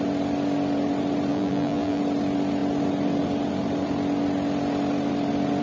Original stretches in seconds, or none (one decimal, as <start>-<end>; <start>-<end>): 0.0-1.3; 2.0-5.6